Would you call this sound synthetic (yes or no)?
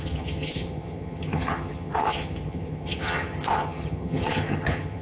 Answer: yes